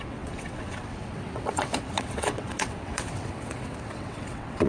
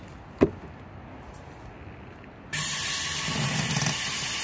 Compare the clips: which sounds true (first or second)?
second